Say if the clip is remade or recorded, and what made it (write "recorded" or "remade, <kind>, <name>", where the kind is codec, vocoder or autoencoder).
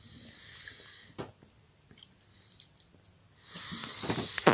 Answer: recorded